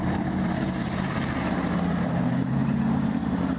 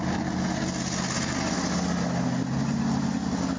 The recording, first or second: second